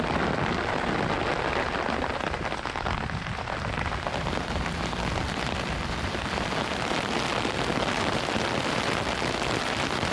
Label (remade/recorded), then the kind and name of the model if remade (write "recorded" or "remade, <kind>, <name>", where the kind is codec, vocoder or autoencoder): recorded